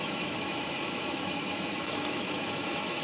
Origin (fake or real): fake